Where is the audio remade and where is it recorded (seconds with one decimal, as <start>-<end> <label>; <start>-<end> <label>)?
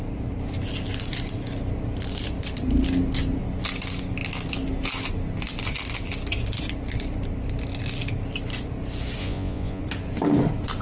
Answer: 0.0-9.2 recorded; 9.2-9.8 remade; 9.8-10.8 recorded